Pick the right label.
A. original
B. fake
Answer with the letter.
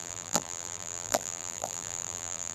B